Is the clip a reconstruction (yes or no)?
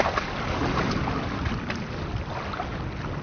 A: no